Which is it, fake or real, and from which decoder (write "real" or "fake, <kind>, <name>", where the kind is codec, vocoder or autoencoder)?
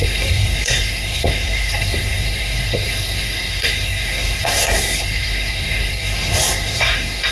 fake, codec, SNAC